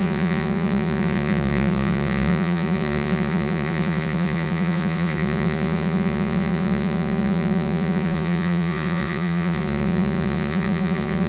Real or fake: fake